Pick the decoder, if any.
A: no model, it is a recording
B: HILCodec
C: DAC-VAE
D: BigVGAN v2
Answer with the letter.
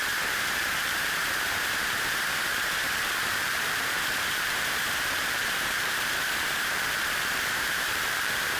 D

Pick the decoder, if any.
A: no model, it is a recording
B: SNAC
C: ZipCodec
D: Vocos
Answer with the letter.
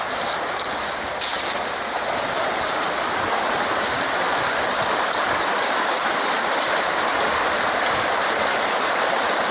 A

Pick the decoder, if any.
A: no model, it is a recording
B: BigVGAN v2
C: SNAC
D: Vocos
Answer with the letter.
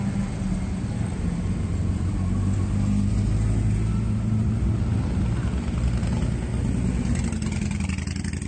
A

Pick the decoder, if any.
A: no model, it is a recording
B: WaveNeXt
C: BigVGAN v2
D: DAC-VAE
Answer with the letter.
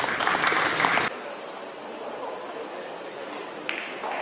A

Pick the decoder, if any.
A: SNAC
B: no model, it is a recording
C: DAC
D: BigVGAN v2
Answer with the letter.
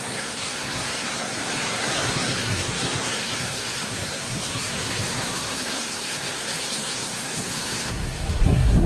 A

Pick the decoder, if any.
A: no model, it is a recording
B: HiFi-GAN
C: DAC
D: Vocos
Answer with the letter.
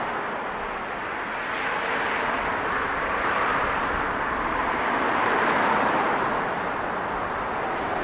A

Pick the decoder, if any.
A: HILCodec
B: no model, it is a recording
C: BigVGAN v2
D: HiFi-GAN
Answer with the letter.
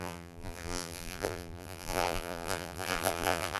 C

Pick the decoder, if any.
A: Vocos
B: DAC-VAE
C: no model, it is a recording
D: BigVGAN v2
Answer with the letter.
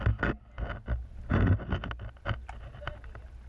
C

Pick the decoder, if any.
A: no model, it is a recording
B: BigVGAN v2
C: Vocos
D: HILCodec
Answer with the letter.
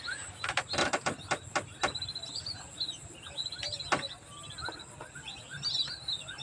A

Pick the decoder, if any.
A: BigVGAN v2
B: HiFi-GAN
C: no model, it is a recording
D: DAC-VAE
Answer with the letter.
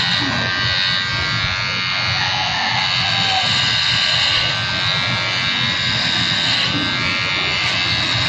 C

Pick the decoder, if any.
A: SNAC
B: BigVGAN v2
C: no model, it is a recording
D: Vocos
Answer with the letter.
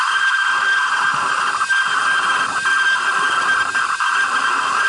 B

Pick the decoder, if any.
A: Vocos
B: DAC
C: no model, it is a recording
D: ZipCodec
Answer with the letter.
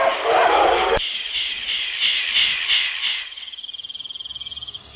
C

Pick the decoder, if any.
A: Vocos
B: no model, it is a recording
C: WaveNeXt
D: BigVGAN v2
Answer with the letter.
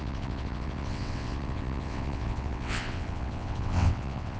C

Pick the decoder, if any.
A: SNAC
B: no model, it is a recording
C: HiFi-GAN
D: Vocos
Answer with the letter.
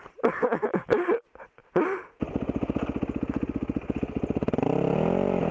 B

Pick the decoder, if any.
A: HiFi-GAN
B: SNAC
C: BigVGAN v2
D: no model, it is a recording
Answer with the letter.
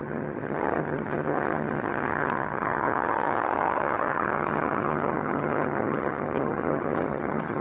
A